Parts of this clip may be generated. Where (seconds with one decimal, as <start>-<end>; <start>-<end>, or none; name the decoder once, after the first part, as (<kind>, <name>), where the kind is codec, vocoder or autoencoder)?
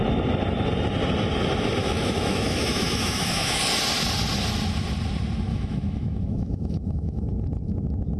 1.8-3.6 (autoencoder, DAC-VAE); 5.5-7.2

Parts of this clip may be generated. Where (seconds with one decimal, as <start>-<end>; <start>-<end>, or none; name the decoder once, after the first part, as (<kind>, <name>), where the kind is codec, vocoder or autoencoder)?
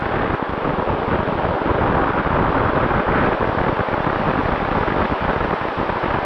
2.6-4.4 (vocoder, BigVGAN v2); 5.6-6.2